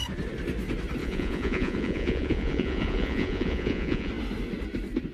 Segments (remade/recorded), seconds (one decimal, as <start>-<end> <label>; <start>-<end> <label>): 0.0-1.0 recorded; 1.0-4.1 remade; 4.1-5.1 recorded